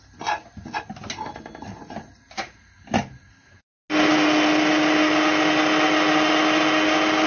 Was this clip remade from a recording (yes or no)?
no